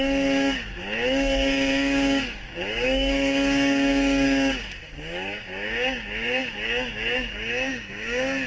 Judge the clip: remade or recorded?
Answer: remade